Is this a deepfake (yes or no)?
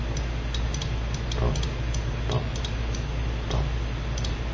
no